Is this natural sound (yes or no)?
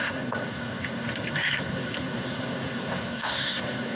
no